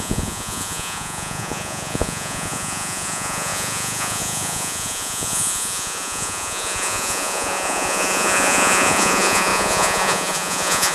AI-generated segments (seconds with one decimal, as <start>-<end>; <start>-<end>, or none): 0.0-10.9